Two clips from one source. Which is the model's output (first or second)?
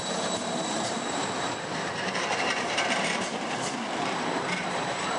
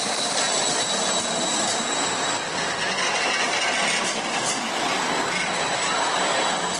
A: first